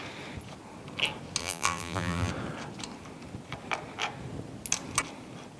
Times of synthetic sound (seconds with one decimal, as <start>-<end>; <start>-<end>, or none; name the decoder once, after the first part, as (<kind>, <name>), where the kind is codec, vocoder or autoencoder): 1.4-2.3 (vocoder, BigVGAN v2)